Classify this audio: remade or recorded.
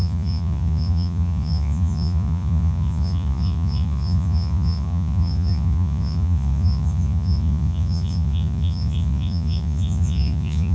remade